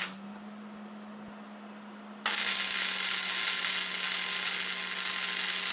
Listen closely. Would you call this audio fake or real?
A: real